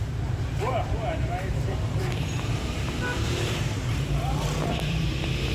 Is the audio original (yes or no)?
no